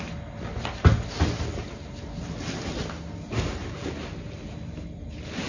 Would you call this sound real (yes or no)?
yes